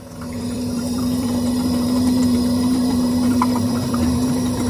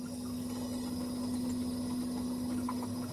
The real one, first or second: second